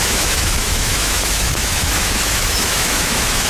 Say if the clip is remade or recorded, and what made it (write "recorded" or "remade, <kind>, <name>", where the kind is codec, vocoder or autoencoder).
remade, autoencoder, DAC-VAE